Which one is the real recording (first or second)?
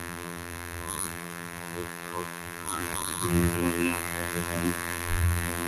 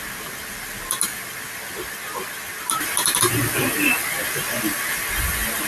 second